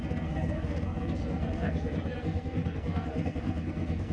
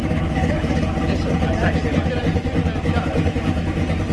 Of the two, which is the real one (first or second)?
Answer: second